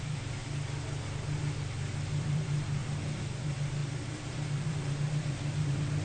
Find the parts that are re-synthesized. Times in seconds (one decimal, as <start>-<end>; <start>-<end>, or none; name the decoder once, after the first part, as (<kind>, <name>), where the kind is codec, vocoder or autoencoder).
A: 0.0-0.4 (vocoder, BigVGAN v2); 2.2-2.8; 3.4-6.0